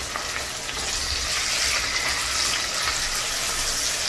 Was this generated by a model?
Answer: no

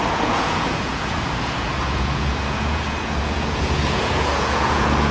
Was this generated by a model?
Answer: yes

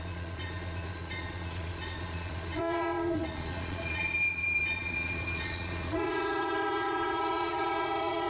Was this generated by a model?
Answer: yes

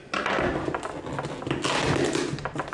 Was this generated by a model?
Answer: no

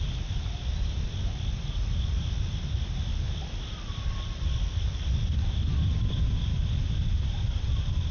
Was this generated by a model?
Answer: no